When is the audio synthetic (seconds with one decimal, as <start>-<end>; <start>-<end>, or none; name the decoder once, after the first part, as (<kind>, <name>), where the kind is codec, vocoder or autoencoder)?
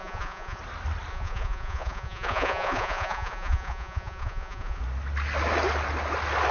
0.0-0.6 (vocoder, Vocos); 1.1-4.8